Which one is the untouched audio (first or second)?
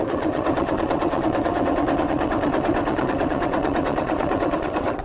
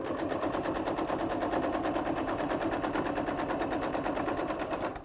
second